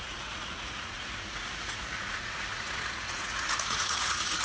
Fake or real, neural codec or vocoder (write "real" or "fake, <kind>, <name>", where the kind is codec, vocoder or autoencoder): fake, vocoder, Vocos